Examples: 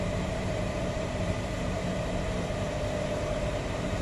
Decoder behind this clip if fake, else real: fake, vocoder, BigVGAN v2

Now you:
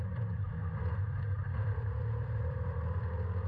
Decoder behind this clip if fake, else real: fake, vocoder, BigVGAN v2